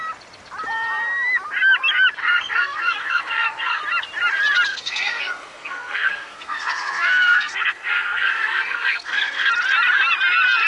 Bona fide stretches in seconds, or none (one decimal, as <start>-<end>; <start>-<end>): 0.0-2.2; 3.8-4.7; 9.5-10.7